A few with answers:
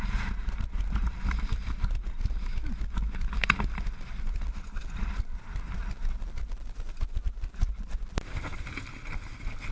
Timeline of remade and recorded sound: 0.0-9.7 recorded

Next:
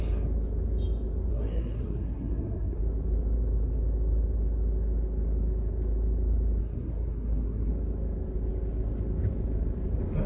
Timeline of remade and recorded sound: 0.0-1.3 recorded; 1.3-2.8 remade; 2.8-6.6 recorded; 6.6-7.7 remade; 7.7-10.3 recorded

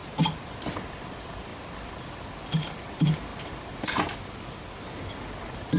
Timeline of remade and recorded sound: 0.0-0.6 remade; 0.6-1.5 recorded; 1.5-2.6 remade; 2.6-5.8 recorded